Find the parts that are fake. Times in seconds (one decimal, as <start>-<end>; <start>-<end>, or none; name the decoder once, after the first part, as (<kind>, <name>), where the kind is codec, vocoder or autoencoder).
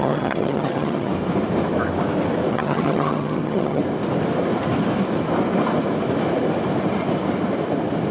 0.0-1.1 (vocoder, HiFi-GAN); 2.5-3.8